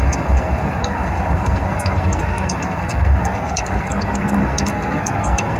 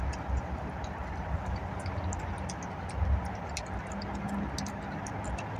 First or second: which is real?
second